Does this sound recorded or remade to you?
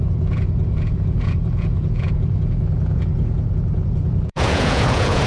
remade